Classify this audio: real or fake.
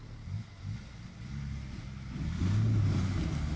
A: real